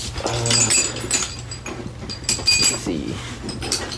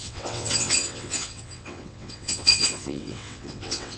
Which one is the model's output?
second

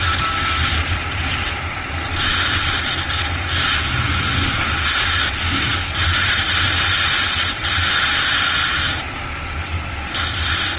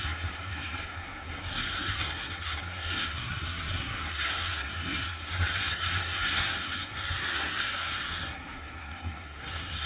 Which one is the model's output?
second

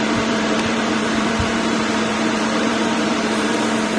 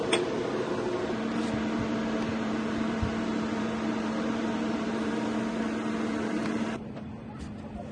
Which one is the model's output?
first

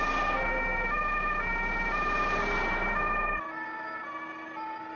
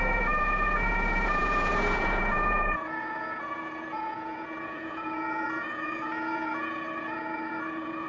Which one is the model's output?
second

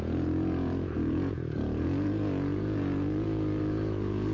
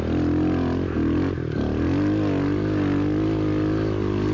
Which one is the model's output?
first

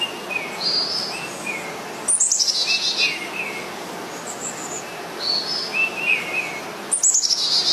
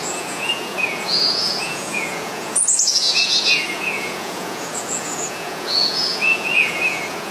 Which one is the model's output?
second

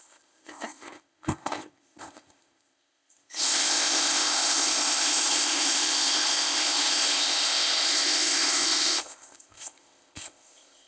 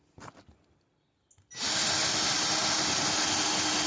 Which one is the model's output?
first